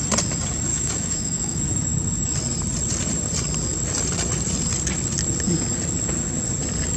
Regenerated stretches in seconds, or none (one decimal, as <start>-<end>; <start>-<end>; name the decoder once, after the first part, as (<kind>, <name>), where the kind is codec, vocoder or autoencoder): 0.7-1.6 (autoencoder, DAC-VAE)